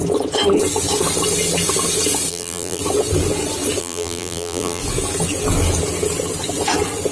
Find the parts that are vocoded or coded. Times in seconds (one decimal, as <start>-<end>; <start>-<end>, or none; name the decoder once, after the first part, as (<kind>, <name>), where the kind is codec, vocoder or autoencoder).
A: 2.3-2.8 (vocoder, BigVGAN v2); 3.8-4.8